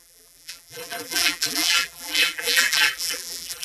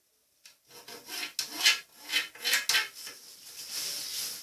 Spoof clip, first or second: first